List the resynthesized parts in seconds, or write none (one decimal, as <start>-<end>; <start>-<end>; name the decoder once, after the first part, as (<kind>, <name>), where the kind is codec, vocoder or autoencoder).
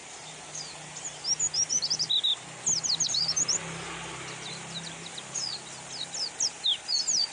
0.0-0.7 (vocoder, BigVGAN v2)